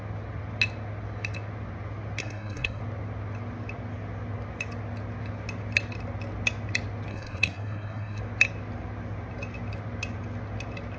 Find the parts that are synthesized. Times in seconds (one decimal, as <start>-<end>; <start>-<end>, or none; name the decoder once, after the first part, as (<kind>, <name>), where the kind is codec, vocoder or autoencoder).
2.2-2.8 (codec, SNAC); 7.1-8.2